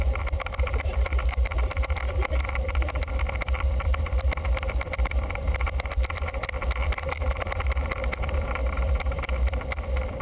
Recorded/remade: recorded